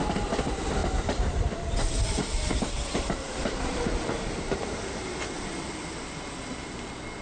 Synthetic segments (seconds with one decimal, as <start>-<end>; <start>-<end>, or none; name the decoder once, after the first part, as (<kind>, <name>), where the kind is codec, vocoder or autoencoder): 0.8-5.1 (vocoder, BigVGAN v2)